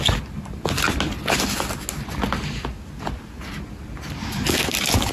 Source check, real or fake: real